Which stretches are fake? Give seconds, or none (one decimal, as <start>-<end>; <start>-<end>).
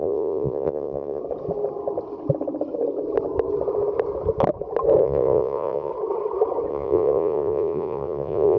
0.0-1.2; 5.0-5.9; 6.7-8.6